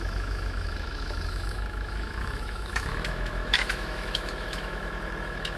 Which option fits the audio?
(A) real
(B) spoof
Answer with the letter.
B